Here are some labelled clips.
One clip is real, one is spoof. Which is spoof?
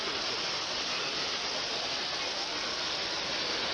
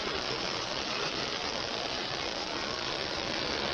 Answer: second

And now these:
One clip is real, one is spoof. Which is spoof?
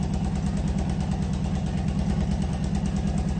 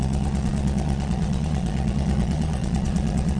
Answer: second